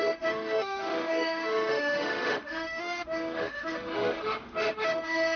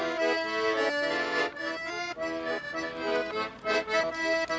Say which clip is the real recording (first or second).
second